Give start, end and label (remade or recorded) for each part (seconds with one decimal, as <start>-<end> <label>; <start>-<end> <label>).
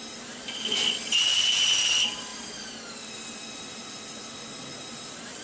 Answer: 0.0-5.4 recorded